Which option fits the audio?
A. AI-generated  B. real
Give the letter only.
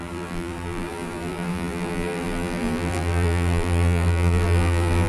A